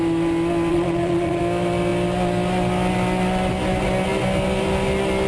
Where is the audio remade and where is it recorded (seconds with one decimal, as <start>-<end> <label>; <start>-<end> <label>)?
0.0-0.7 recorded; 0.7-1.4 remade; 1.4-5.3 recorded